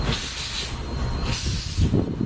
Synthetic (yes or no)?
no